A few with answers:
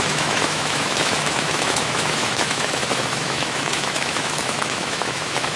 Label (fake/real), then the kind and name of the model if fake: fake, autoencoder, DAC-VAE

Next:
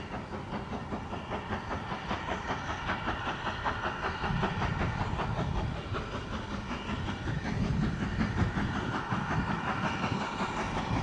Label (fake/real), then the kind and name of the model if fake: real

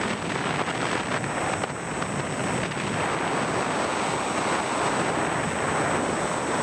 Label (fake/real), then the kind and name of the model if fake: real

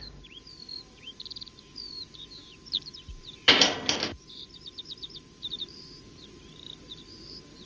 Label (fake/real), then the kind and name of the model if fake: fake, vocoder, BigVGAN v2